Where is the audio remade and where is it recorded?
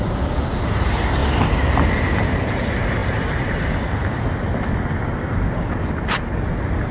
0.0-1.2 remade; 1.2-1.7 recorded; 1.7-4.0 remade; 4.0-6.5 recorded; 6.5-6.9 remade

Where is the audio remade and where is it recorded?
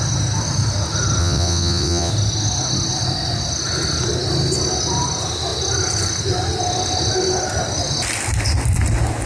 0.0-1.2 recorded; 1.2-2.1 remade; 2.1-9.3 recorded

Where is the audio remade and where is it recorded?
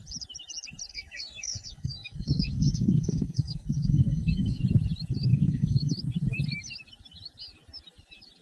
0.0-0.9 recorded; 0.9-4.6 remade; 4.6-5.3 recorded; 5.3-5.9 remade; 5.9-8.4 recorded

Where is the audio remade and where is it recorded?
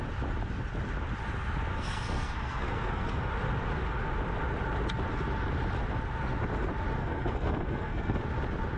0.0-1.7 recorded; 1.7-3.3 remade; 3.3-7.0 recorded; 7.0-8.2 remade; 8.2-8.8 recorded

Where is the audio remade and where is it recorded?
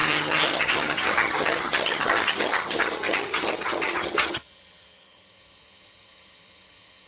0.0-7.1 remade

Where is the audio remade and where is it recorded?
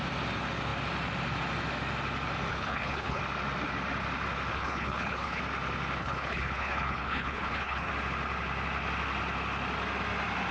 0.0-2.5 recorded; 2.5-3.2 remade; 3.2-4.5 recorded; 4.5-5.4 remade; 5.4-6.0 recorded; 6.0-7.9 remade; 7.9-10.5 recorded